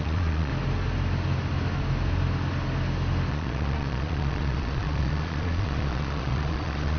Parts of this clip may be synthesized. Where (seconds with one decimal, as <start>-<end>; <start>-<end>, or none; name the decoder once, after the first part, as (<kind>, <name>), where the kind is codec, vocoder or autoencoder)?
0.0-0.5 (vocoder, Vocos); 3.3-7.0